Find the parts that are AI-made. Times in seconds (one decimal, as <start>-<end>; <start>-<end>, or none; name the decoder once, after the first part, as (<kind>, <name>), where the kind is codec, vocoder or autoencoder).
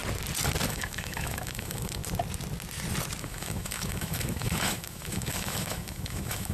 0.7-2.0 (autoencoder, DAC-VAE); 3.2-6.5